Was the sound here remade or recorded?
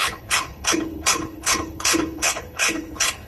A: remade